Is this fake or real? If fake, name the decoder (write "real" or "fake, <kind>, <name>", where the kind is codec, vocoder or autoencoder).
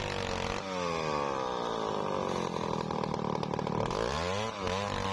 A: real